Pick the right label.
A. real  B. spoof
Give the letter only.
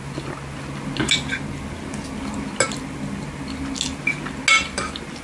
A